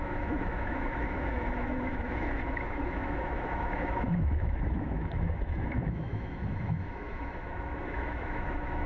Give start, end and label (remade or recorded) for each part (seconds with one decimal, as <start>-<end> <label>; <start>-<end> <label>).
0.0-8.9 remade